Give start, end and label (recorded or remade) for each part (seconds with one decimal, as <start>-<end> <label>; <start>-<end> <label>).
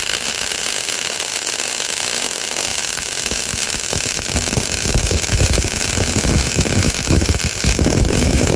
0.0-8.6 remade